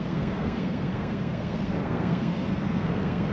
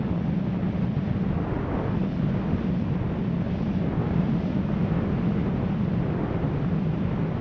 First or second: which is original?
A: second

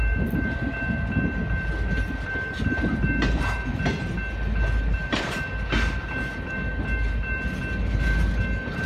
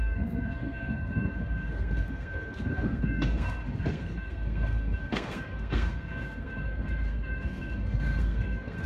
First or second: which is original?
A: first